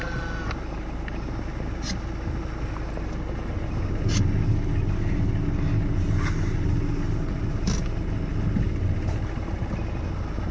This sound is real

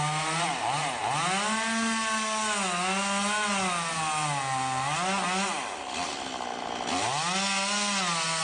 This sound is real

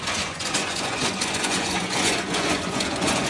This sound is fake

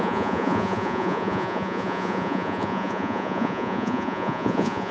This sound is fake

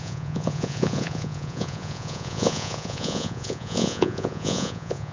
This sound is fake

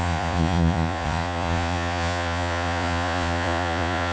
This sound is fake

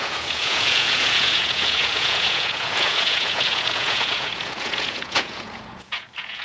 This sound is fake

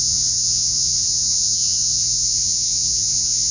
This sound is fake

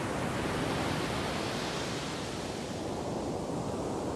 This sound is real